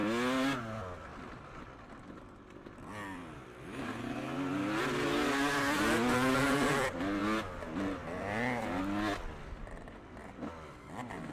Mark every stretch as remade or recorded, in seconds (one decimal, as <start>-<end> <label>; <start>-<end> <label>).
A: 0.0-1.1 recorded; 1.1-4.8 remade; 4.8-11.3 recorded